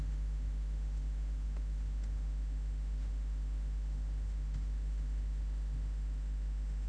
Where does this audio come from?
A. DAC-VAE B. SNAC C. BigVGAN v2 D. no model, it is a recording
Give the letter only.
A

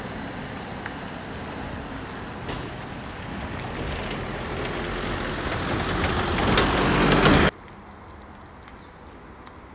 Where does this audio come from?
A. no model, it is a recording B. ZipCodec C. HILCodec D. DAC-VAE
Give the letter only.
A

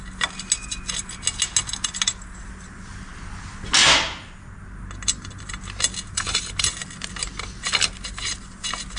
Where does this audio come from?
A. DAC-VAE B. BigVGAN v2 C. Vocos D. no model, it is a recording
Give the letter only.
D